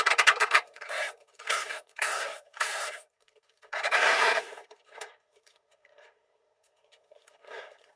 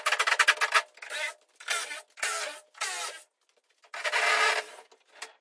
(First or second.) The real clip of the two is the second